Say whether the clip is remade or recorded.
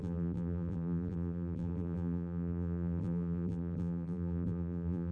remade